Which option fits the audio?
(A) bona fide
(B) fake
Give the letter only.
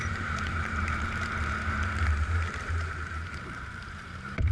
B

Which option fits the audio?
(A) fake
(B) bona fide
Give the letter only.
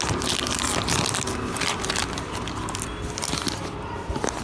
B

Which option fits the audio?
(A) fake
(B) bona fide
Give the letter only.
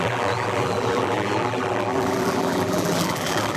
A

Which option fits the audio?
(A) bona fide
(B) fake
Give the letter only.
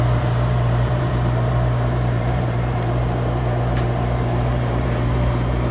B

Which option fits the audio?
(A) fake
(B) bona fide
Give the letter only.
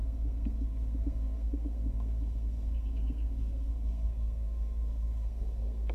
A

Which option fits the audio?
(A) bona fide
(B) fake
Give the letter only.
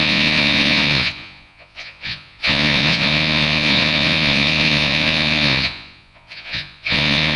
B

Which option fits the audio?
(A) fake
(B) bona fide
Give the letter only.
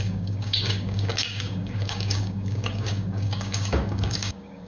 A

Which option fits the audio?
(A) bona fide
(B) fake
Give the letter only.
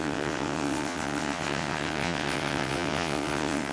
B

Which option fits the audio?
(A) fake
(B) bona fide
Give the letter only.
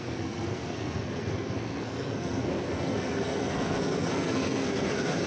A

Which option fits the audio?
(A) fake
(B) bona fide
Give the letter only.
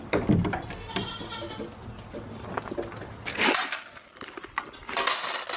B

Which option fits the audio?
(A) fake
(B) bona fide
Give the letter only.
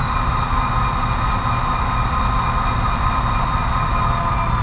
B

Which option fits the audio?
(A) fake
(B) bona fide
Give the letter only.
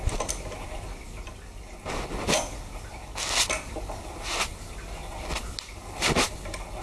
B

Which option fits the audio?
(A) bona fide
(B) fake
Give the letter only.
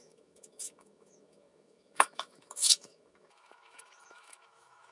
B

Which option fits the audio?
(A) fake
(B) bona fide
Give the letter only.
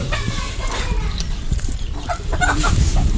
A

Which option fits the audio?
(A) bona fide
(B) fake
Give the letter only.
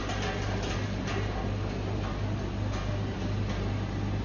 A